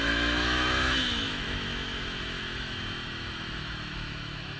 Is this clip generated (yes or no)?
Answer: yes